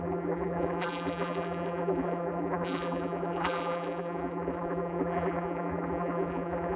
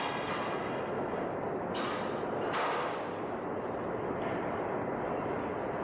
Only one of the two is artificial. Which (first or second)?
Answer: first